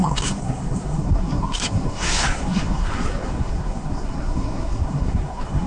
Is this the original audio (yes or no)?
no